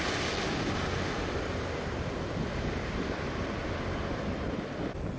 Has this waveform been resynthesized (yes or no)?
no